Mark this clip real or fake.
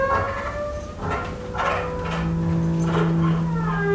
real